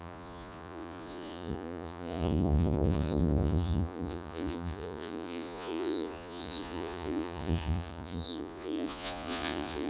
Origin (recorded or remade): remade